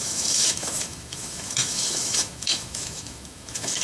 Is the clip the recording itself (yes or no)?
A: no